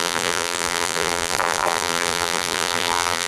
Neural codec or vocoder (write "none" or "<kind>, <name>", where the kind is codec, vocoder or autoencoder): vocoder, BigVGAN v2